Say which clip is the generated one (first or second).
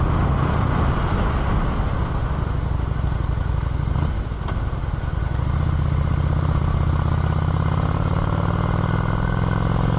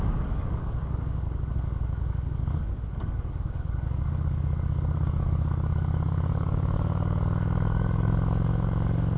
second